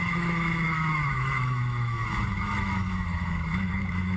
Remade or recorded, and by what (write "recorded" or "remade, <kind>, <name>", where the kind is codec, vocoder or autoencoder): remade, autoencoder, DAC-VAE